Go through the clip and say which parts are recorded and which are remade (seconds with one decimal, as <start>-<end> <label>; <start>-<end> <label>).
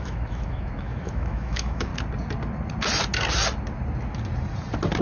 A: 0.0-1.9 remade; 1.9-5.0 recorded